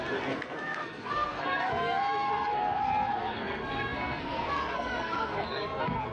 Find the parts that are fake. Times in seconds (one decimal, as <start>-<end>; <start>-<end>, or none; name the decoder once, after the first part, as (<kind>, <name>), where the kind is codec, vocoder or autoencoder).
0.0-6.1 (codec, SNAC)